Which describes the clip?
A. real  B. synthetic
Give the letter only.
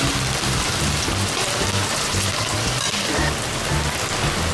B